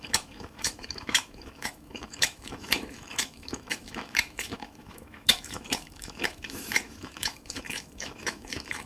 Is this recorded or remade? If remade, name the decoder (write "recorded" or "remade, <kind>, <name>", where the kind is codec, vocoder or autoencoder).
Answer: remade, autoencoder, DAC-VAE